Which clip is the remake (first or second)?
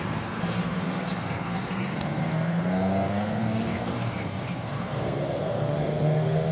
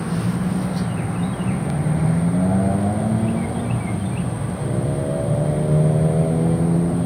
first